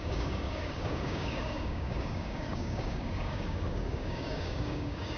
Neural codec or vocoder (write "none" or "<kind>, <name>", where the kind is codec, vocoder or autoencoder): codec, DAC